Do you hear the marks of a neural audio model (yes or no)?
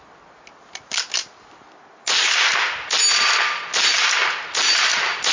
no